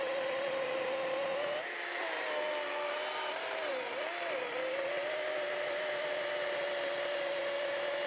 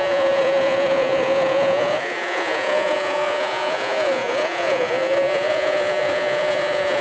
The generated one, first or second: second